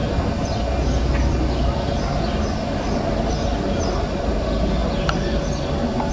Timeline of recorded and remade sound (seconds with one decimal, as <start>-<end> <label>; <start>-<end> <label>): 0.0-6.1 recorded